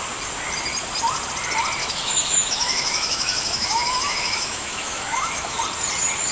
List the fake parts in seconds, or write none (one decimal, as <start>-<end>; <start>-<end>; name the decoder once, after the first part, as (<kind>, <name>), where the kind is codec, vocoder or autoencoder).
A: 1.8-5.6 (autoencoder, DAC-VAE)